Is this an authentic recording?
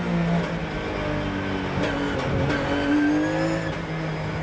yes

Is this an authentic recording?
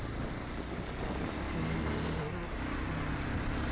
yes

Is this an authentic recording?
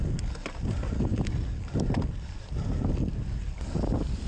yes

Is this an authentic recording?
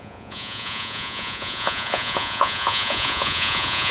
no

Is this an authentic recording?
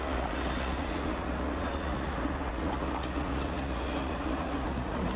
no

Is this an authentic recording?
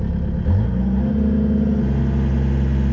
yes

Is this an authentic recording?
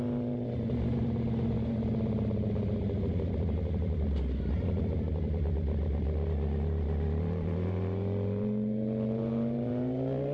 yes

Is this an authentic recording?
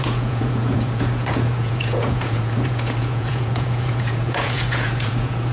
no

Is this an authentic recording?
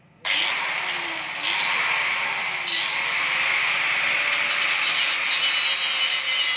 yes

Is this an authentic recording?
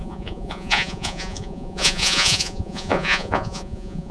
no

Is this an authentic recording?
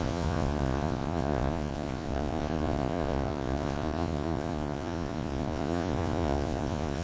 no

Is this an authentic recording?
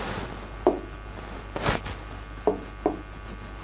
yes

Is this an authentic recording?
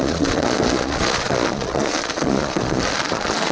no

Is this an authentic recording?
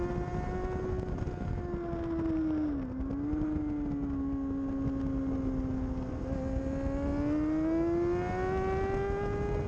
yes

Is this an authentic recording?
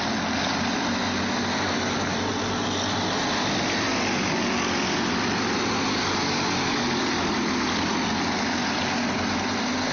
yes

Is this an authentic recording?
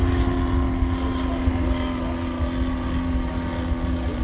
yes